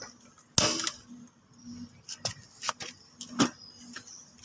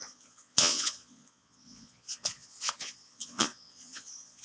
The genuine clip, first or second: first